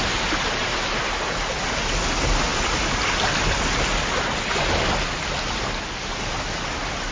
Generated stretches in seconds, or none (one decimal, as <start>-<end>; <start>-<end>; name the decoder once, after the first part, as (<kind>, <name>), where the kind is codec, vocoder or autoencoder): none